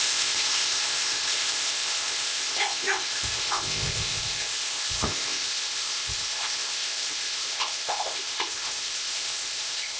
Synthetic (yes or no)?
yes